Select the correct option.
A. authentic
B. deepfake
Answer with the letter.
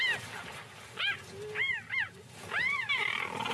A